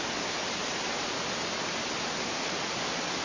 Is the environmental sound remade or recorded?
recorded